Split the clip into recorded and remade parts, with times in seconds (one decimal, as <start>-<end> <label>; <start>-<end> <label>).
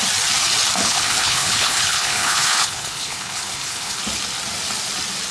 0.0-0.8 recorded; 0.8-4.0 remade; 4.0-5.3 recorded